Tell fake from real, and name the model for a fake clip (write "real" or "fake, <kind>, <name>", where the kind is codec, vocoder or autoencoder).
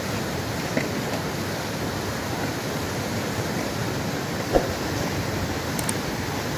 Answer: real